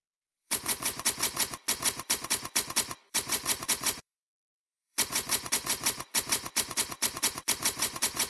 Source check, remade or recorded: remade